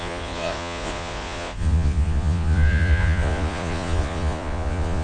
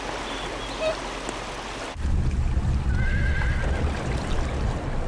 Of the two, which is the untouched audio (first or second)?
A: second